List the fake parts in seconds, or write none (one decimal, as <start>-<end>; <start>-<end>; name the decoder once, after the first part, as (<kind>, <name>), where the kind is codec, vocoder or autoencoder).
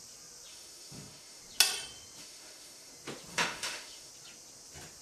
0.5-1.4 (autoencoder, DAC-VAE); 2.2-2.9; 3.3-4.1